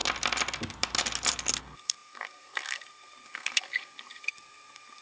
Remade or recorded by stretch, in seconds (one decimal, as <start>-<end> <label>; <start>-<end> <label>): 0.0-1.6 recorded; 1.6-5.0 remade